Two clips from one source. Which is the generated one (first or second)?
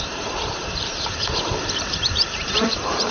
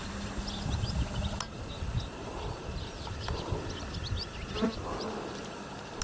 first